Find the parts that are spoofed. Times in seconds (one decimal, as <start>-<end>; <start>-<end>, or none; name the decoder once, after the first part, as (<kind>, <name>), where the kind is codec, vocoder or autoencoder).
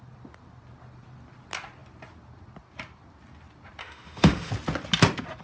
3.8-4.5 (autoencoder, DAC-VAE)